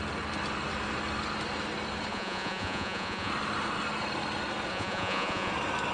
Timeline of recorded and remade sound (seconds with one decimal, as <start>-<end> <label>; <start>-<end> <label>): 0.0-2.1 recorded; 2.1-3.3 remade; 3.3-4.7 recorded; 4.7-5.5 remade; 5.5-5.9 recorded